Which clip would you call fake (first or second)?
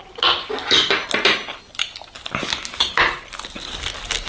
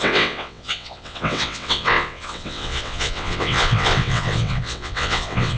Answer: second